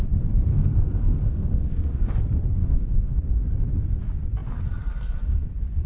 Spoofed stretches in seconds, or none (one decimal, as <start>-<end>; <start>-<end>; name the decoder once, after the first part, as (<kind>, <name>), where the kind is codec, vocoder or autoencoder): 0.5-2.1 (codec, SNAC); 2.6-3.2